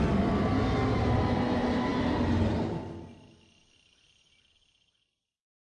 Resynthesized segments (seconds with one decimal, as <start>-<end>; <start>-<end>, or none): none